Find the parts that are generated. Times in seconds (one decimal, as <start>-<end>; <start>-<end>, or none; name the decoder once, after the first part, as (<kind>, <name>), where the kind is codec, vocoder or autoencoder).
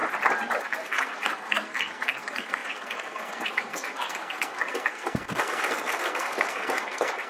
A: 0.6-7.3 (codec, SNAC)